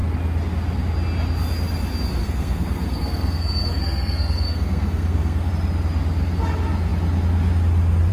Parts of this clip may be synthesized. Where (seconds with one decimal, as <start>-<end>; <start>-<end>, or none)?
2.2-5.5